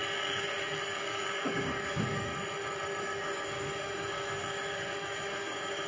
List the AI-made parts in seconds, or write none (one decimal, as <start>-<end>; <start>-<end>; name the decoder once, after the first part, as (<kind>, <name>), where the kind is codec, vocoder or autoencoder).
0.0-2.3 (codec, DAC); 3.0-5.9